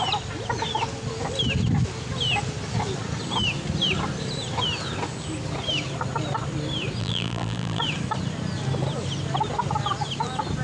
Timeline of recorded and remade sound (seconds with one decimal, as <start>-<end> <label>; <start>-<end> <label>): 0.0-7.0 recorded; 7.0-7.8 remade; 7.8-10.6 recorded